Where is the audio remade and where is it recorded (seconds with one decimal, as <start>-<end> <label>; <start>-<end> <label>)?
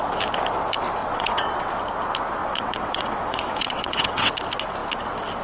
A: 0.0-1.0 recorded; 1.0-1.7 remade; 1.7-2.4 recorded; 2.4-4.3 remade; 4.3-5.4 recorded